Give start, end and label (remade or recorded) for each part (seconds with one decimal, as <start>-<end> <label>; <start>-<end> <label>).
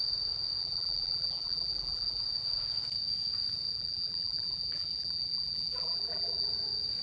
0.0-0.6 recorded; 0.6-2.2 remade; 2.2-3.7 recorded; 3.7-6.5 remade; 6.5-7.0 recorded